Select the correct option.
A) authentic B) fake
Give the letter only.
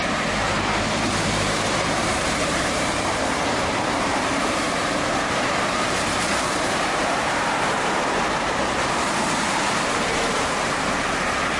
B